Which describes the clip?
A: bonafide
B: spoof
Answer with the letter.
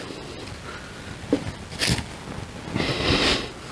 A